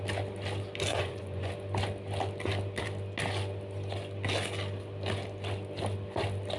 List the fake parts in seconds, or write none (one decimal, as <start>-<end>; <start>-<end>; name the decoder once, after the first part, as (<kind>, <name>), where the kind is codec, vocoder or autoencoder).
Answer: 0.9-1.5 (vocoder, Vocos)